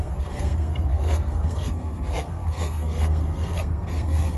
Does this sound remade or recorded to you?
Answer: remade